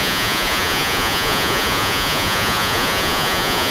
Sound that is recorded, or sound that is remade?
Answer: remade